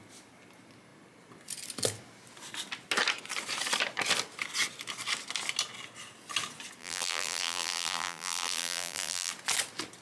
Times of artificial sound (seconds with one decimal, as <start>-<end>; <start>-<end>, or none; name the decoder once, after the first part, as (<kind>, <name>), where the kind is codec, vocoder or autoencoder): 6.8-9.3 (vocoder, BigVGAN v2)